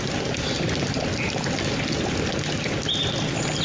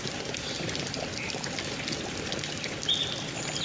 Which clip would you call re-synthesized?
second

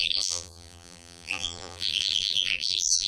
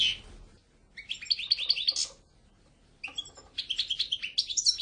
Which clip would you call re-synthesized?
first